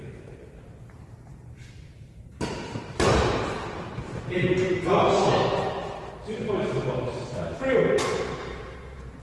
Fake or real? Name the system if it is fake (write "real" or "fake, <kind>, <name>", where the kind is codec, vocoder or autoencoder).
fake, vocoder, BigVGAN v2